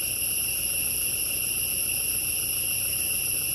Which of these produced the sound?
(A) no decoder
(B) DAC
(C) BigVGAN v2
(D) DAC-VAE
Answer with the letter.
A